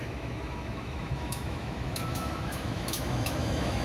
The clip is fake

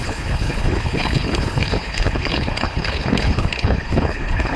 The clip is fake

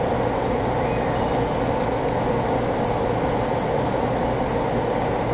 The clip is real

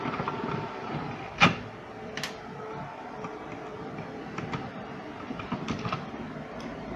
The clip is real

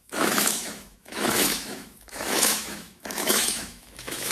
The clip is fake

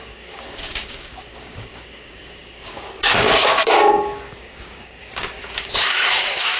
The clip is fake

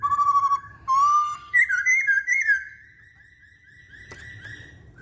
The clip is fake